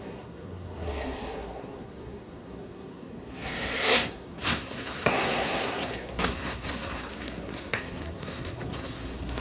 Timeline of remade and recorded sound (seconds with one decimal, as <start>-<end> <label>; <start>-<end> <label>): 0.0-9.4 remade